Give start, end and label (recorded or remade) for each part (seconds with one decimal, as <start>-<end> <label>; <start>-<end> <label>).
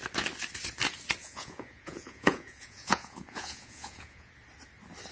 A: 0.0-1.2 recorded; 1.2-4.3 remade; 4.3-5.1 recorded